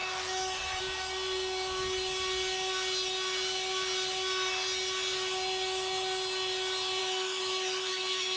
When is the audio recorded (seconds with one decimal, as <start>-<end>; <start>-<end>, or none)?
0.8-7.0